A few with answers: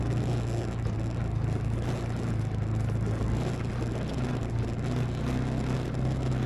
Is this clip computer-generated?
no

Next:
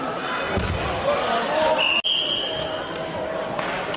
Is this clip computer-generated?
no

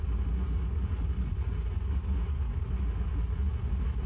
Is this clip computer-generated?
no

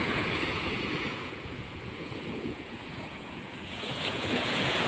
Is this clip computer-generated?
yes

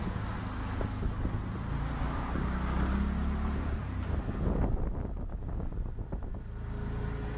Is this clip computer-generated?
no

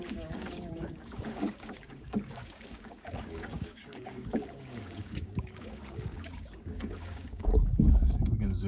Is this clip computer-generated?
yes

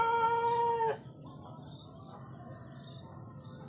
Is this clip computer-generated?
no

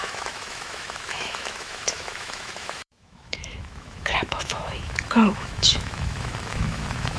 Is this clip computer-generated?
yes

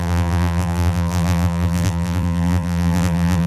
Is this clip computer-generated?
yes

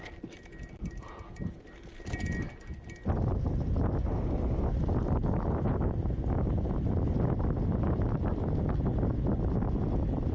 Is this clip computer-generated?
no